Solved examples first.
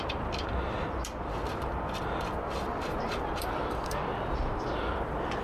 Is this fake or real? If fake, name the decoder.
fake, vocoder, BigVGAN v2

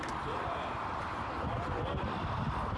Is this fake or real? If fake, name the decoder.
real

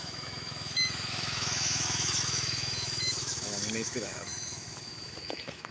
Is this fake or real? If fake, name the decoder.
fake, autoencoder, DAC-VAE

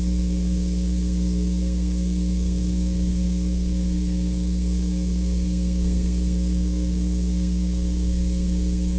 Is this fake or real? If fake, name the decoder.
fake, codec, SNAC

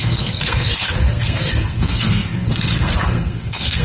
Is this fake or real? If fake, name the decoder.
fake, codec, SNAC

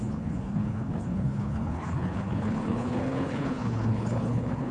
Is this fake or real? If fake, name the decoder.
fake, codec, HILCodec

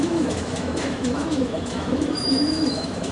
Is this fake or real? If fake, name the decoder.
fake, autoencoder, DAC-VAE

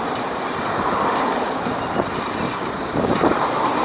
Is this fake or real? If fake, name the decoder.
fake, vocoder, BigVGAN v2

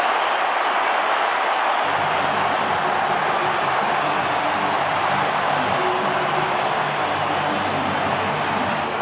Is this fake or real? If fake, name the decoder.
real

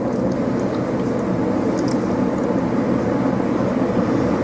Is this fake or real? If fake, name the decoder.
real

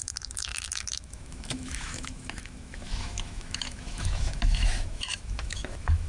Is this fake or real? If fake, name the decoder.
fake, autoencoder, DAC-VAE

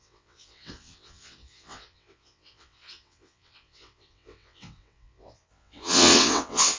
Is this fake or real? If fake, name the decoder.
fake, vocoder, WaveNeXt